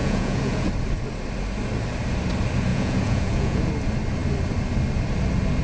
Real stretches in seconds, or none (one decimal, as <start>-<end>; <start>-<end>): 0.7-2.7; 3.7-5.6